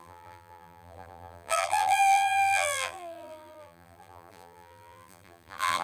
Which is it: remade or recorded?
remade